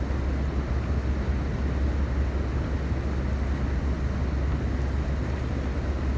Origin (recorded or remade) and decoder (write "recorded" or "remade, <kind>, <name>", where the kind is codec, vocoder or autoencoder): recorded